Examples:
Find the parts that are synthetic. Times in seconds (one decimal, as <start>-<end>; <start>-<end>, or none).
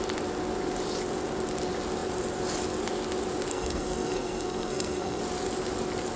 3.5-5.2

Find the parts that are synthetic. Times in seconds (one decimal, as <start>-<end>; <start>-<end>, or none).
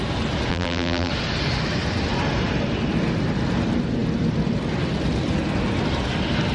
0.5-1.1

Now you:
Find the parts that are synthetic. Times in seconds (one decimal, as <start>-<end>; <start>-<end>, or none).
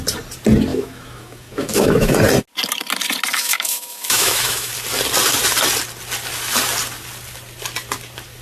0.7-2.1; 3.3-4.7